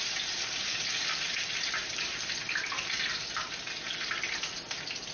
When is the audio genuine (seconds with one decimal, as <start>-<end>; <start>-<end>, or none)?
0.0-1.8; 3.5-5.1